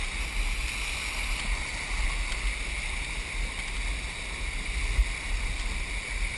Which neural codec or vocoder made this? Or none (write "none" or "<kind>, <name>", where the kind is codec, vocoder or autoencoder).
none